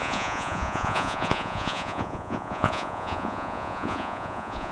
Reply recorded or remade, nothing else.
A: remade